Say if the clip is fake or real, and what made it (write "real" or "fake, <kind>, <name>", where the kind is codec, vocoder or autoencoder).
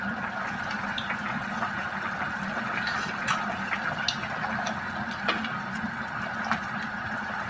real